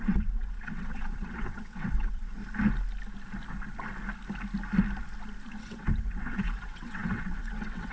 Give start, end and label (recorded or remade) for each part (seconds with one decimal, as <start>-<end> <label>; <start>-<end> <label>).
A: 0.0-2.4 remade; 2.4-5.6 recorded; 5.6-7.9 remade